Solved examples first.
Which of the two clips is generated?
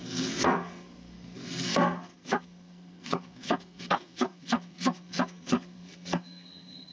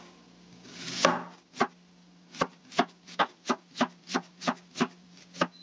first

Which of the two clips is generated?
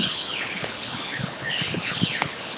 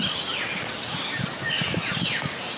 first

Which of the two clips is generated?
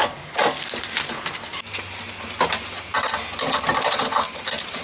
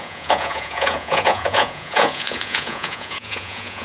second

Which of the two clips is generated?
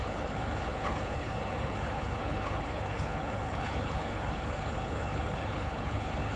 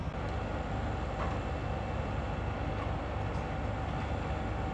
first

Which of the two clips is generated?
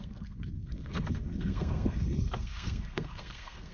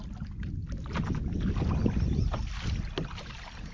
first